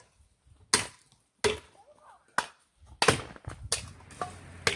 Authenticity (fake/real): real